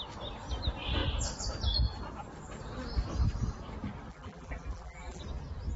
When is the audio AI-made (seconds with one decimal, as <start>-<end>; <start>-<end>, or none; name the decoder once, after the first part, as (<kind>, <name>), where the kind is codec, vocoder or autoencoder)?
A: 4.1-5.2 (vocoder, BigVGAN v2)